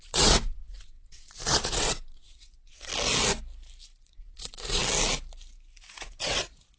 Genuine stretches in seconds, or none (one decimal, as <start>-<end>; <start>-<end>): 2.9-4.0; 4.8-5.9